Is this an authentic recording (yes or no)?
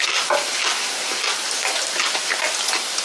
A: yes